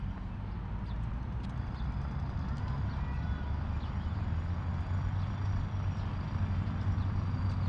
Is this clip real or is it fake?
real